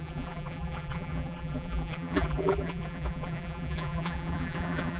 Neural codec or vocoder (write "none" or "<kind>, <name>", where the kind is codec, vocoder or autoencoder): vocoder, BigVGAN v2